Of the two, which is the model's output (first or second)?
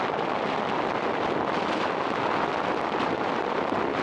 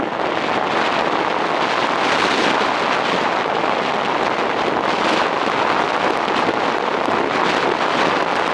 first